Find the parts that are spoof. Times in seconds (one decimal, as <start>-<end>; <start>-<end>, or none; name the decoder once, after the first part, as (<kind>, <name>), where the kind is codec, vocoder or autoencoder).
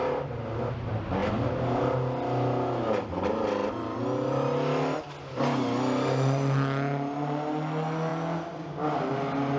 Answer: none